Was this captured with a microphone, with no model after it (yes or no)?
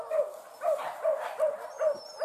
yes